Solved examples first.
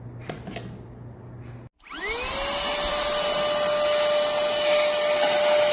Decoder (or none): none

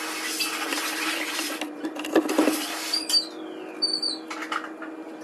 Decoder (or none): none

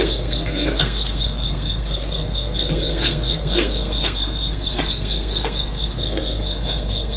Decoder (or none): codec, SNAC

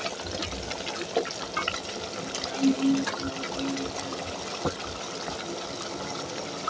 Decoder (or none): none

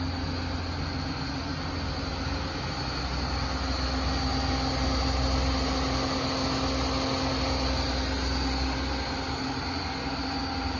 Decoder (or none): none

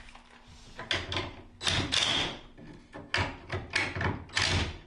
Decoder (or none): none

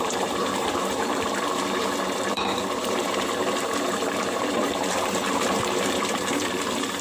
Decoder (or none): vocoder, BigVGAN v2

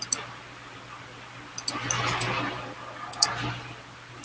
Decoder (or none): none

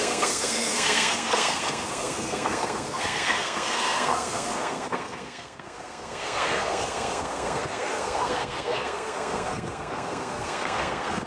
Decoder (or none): codec, SNAC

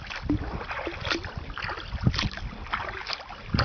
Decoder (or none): none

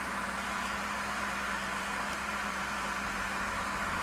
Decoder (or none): vocoder, BigVGAN v2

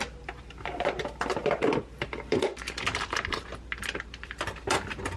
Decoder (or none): vocoder, BigVGAN v2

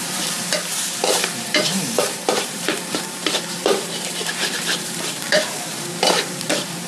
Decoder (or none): vocoder, BigVGAN v2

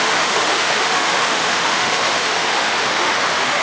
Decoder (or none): autoencoder, DAC-VAE